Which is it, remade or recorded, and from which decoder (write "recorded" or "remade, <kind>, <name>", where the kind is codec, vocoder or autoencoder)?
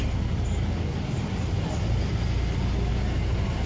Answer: recorded